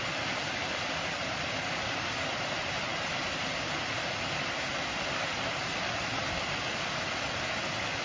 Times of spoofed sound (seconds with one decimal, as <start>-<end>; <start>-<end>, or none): none